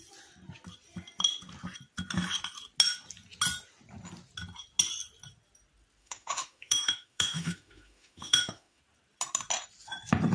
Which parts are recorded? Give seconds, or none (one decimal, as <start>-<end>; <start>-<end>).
0.0-6.0; 8.8-10.3